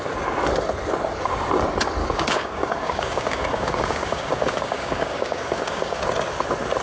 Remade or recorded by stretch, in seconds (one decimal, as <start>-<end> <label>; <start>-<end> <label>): 0.0-2.0 recorded; 2.0-6.0 remade; 6.0-6.8 recorded